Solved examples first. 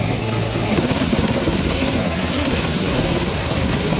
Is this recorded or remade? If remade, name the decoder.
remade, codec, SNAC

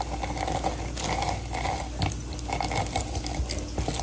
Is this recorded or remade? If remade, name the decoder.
recorded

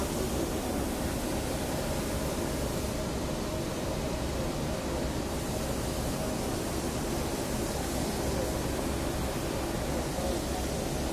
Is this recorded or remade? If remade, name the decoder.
recorded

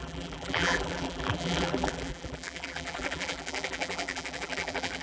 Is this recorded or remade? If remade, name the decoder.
remade, vocoder, BigVGAN v2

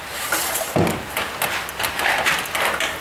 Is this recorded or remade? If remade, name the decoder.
recorded